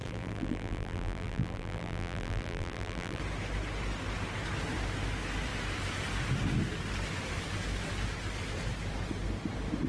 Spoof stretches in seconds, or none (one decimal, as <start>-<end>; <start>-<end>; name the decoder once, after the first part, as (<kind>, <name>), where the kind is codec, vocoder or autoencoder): 0.0-3.2 (vocoder, BigVGAN v2)